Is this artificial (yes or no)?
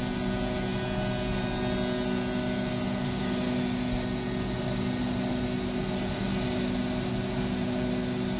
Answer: no